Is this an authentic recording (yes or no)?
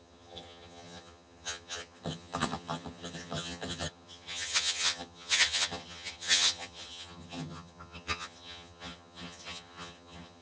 no